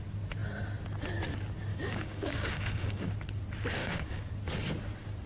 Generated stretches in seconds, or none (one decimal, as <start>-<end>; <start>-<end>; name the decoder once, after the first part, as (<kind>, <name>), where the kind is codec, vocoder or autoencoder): 1.7-3.1 (codec, DAC); 3.8-4.3